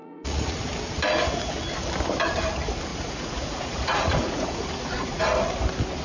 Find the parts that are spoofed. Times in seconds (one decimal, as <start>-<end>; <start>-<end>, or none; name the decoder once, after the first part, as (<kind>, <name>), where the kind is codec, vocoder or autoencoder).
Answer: 0.0-0.6 (vocoder, Vocos); 2.9-5.2